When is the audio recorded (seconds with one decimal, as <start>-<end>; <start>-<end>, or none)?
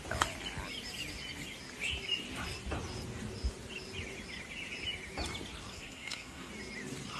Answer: 0.0-5.7; 6.5-7.2